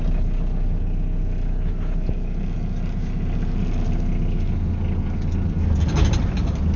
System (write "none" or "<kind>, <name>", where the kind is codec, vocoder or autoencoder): none